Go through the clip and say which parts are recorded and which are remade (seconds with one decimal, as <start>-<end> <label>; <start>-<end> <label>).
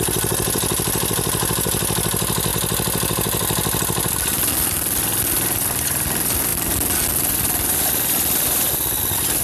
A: 0.0-9.4 recorded